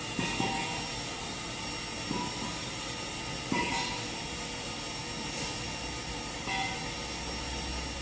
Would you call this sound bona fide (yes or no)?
yes